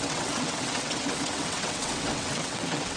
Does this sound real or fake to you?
fake